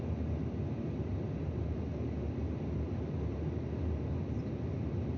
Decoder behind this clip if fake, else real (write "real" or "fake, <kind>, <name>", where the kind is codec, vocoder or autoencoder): real